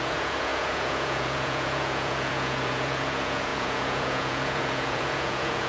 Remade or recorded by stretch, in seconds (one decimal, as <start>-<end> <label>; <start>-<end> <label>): 0.0-5.7 remade

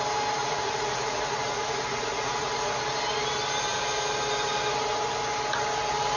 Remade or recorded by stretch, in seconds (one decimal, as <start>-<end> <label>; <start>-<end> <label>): 0.0-0.4 recorded; 0.4-2.8 remade; 2.8-6.2 recorded

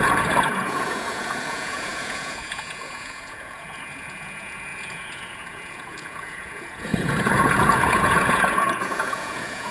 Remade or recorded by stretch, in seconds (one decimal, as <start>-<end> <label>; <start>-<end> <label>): 0.0-9.7 remade

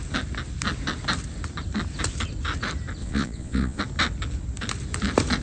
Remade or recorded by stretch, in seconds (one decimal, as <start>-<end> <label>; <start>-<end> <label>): 0.0-3.0 recorded; 3.0-3.8 remade; 3.8-5.4 recorded

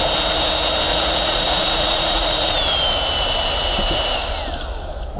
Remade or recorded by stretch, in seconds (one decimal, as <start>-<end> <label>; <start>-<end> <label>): 0.0-0.9 recorded; 0.9-2.5 remade; 2.5-5.2 recorded

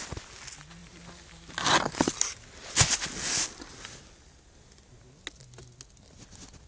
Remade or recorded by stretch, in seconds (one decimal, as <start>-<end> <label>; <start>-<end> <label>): 0.0-6.7 recorded